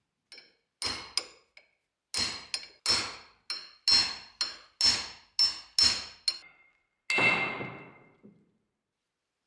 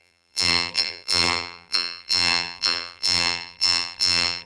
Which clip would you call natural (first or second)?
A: first